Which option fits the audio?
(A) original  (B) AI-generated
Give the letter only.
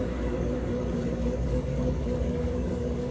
B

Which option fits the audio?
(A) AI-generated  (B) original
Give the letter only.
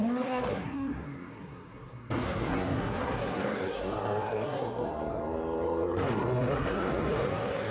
A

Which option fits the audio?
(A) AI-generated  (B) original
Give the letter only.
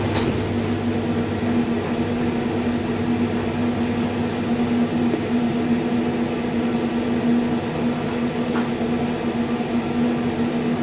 B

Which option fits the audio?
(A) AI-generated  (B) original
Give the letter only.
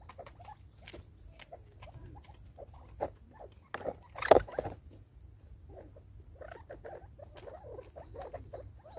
B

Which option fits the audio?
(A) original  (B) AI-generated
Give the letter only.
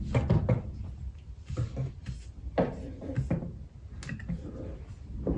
A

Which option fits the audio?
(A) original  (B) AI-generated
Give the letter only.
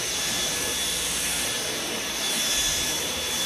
B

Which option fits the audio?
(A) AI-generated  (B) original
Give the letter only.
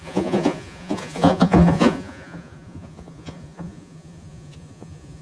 A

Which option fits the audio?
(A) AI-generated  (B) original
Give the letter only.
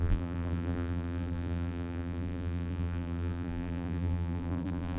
A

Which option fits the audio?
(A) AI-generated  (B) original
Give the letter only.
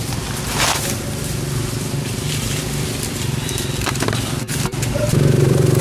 A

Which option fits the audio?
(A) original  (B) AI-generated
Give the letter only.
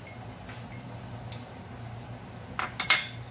A